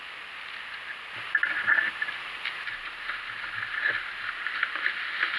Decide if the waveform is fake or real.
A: real